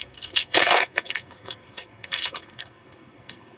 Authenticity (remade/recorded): remade